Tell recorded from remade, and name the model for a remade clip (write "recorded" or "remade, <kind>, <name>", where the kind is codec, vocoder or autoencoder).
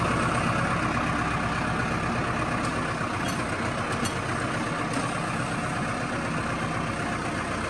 recorded